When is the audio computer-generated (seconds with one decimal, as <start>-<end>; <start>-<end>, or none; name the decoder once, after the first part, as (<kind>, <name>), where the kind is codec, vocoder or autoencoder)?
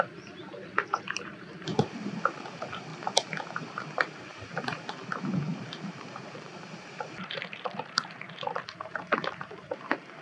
0.0-2.9 (vocoder, BigVGAN v2); 3.6-5.0; 5.6-10.2